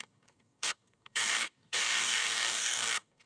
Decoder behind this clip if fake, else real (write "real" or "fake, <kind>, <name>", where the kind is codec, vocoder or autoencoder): fake, codec, DAC